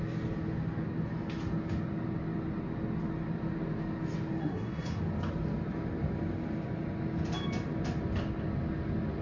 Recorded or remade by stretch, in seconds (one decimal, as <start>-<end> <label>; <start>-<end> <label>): 0.0-4.4 recorded; 4.4-5.0 remade; 5.0-9.2 recorded